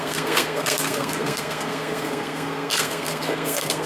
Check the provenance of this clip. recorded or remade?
remade